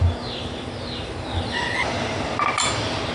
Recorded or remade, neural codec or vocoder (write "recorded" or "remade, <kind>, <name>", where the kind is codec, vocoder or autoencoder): remade, vocoder, BigVGAN v2